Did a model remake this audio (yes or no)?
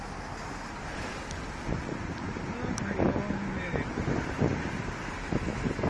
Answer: no